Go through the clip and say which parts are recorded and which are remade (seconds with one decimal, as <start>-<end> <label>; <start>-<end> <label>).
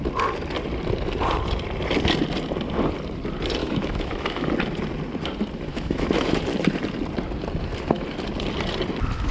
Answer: 0.0-3.6 recorded; 3.6-4.5 remade; 4.5-5.7 recorded; 5.7-6.4 remade; 6.4-9.3 recorded